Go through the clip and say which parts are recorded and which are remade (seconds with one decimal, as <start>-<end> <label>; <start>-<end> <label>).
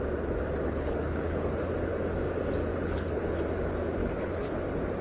0.0-0.6 recorded; 0.6-1.7 remade; 1.7-2.7 recorded; 2.7-3.2 remade; 3.2-4.0 recorded; 4.0-4.6 remade; 4.6-5.0 recorded